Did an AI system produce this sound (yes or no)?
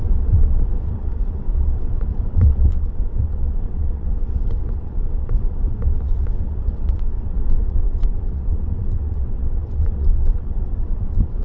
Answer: yes